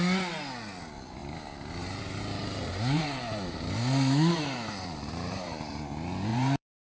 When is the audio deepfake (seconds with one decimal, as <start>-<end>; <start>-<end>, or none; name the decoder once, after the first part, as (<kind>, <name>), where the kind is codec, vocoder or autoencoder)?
2.4-5.7 (vocoder, BigVGAN v2); 6.3-7.0